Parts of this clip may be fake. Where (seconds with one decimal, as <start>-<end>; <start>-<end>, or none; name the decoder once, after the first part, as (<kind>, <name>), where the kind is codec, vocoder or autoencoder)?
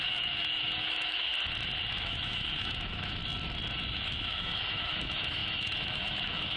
0.0-1.3 (autoencoder, DAC-VAE); 1.9-3.2; 3.9-6.6